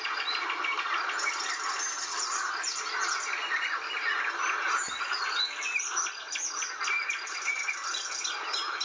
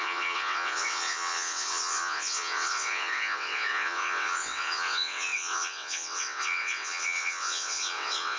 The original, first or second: first